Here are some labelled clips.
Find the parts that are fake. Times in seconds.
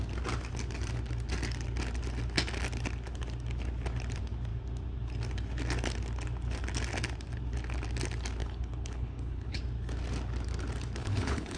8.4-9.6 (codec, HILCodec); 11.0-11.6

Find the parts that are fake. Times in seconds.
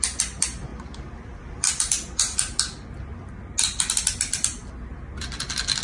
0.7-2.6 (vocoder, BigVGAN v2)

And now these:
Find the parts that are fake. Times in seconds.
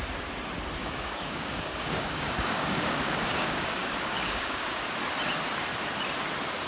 0.8-4.8 (codec, DAC)